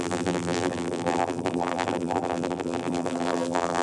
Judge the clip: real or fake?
fake